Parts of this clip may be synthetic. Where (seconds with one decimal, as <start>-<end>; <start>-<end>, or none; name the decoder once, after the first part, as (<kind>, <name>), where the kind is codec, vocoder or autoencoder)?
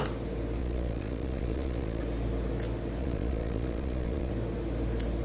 0.6-2.0 (vocoder, Vocos); 3.0-4.3